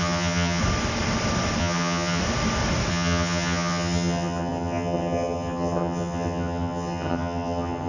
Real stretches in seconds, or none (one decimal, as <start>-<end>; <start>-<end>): 0.6-1.6; 2.2-2.9